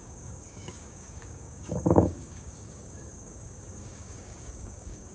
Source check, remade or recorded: remade